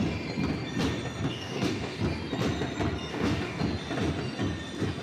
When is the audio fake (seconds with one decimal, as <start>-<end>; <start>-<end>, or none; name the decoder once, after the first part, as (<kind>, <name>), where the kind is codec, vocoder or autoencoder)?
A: 1.3-2.0 (codec, DAC); 3.1-3.6